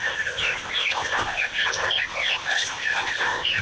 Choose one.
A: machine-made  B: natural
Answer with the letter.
A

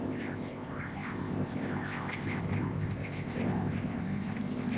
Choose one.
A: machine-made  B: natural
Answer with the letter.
A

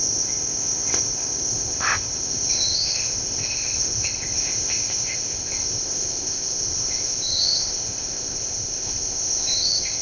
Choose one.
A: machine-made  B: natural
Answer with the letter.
A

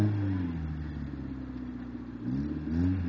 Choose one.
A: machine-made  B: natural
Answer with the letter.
B